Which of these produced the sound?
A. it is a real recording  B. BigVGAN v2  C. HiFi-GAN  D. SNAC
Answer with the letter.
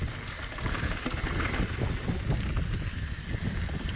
A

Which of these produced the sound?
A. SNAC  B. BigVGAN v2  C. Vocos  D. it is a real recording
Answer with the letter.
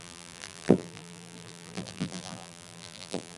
B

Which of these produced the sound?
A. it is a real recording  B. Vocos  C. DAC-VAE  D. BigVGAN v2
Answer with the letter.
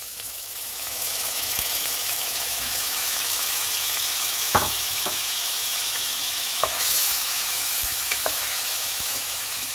C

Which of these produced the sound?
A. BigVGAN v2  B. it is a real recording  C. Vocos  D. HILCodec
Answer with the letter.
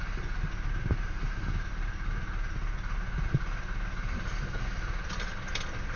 B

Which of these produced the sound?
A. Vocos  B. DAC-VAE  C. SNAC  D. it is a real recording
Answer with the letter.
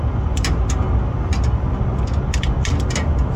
D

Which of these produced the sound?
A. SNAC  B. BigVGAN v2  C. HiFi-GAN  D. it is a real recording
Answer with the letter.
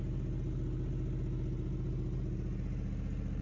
D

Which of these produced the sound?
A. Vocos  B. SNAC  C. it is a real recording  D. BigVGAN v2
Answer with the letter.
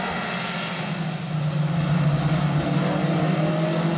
C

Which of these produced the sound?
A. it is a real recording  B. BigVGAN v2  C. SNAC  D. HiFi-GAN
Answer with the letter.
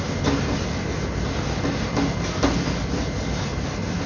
A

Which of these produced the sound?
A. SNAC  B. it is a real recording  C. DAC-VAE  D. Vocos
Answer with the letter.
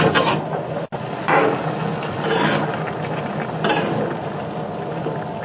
B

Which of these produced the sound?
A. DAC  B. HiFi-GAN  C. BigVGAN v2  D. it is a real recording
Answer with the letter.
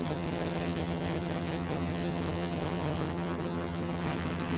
B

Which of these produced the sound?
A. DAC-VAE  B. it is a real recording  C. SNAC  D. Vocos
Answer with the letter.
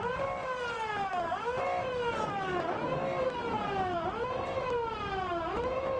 B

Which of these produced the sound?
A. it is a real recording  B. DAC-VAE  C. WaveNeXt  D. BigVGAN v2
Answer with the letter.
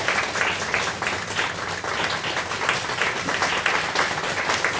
A